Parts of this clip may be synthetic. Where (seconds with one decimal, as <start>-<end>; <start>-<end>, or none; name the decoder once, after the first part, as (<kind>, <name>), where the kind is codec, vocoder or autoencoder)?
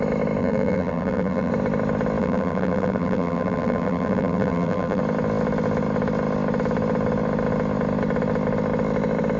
0.4-1.5 (vocoder, BigVGAN v2); 2.2-5.0